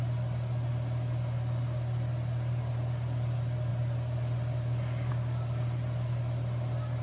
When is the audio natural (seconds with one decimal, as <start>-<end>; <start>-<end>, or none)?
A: 0.0-7.0